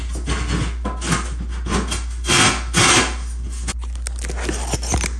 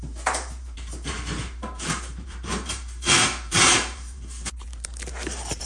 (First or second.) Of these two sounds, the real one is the first